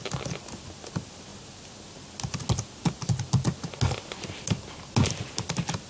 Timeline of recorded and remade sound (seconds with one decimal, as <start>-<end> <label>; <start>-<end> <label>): 0.0-5.9 recorded